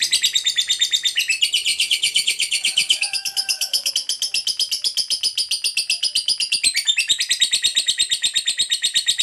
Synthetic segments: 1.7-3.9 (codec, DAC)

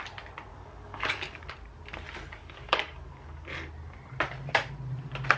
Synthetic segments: 0.5-1.5 (codec, DAC); 2.4-3.5

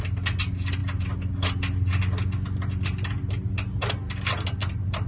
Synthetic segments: none

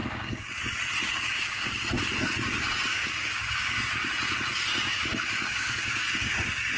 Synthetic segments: 0.0-0.6 (codec, DAC); 1.1-1.9; 2.9-3.8; 4.5-6.8

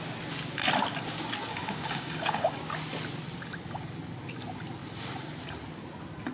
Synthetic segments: 1.5-2.6 (codec, DAC)